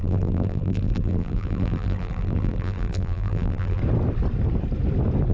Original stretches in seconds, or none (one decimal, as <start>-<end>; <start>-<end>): 3.8-5.3